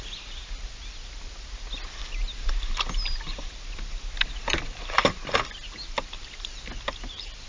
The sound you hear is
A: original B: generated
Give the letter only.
A